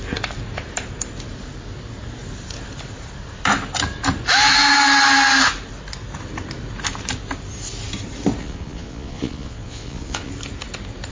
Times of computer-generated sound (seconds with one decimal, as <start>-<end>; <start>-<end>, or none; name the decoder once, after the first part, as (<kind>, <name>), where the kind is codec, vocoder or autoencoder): 8.4-10.3 (vocoder, Vocos)